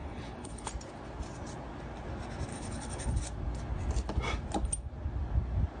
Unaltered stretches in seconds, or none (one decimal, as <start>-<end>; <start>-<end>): 0.7-2.5; 3.2-5.8